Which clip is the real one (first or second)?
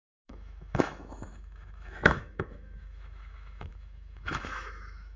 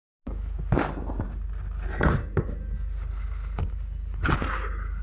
second